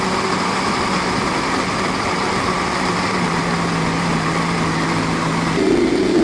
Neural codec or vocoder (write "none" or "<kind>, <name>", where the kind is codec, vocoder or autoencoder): none